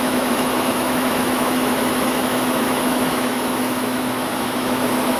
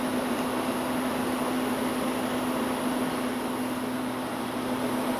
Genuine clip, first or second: second